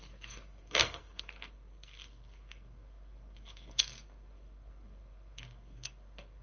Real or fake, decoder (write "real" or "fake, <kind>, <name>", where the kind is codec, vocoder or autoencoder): fake, codec, SNAC